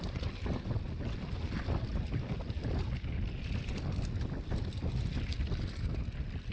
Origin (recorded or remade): recorded